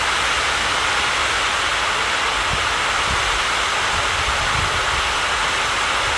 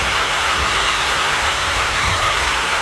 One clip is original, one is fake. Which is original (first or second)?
first